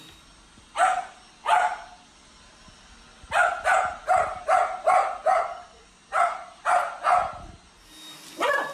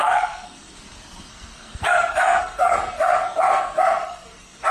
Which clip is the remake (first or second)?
second